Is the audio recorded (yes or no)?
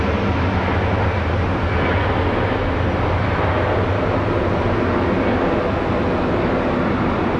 yes